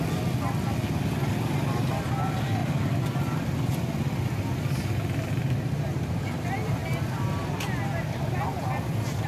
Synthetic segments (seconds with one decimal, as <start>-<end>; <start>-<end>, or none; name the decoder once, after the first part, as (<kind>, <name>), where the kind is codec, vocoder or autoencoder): none